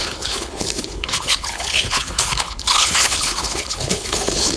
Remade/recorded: remade